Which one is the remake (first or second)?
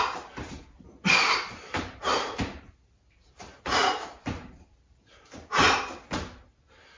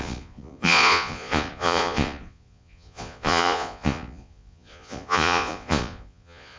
second